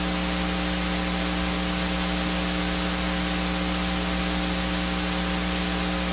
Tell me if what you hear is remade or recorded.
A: recorded